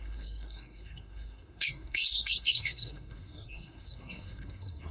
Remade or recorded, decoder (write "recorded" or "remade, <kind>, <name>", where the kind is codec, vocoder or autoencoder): remade, codec, SNAC